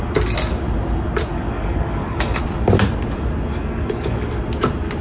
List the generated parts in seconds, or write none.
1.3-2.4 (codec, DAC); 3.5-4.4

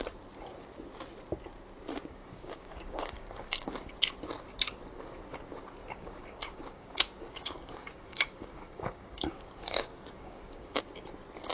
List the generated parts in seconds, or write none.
1.9-3.9 (codec, DAC); 5.8-10.8